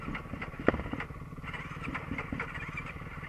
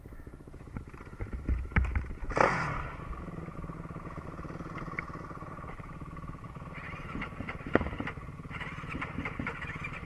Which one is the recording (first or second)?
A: first